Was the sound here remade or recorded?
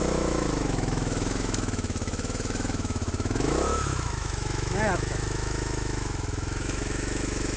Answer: remade